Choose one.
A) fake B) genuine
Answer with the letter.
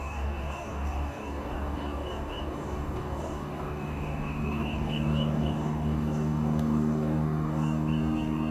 A